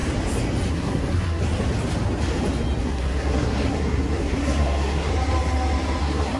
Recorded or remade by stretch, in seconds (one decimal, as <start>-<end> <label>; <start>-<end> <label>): 0.0-0.7 recorded; 0.7-1.4 remade; 1.4-2.8 recorded; 2.8-5.1 remade; 5.1-6.0 recorded; 6.0-6.4 remade